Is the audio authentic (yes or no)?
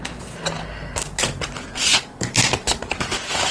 yes